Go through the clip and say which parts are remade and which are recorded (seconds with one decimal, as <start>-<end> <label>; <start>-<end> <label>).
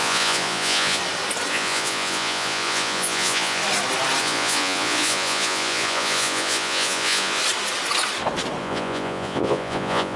0.0-1.0 remade; 1.0-1.5 recorded; 1.5-3.6 remade; 3.6-4.2 recorded; 4.2-7.4 remade; 7.4-8.6 recorded; 8.6-10.2 remade